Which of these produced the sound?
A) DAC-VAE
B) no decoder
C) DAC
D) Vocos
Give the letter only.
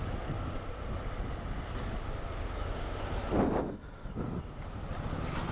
B